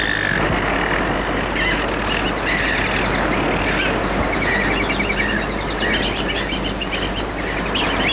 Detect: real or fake real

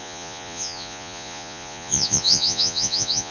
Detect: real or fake fake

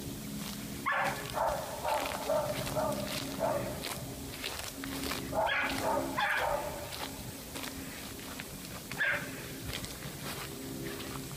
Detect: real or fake real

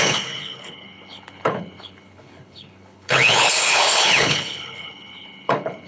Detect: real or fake fake